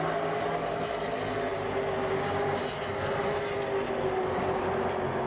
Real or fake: real